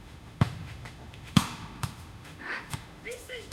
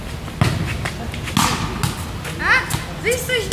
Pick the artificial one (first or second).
first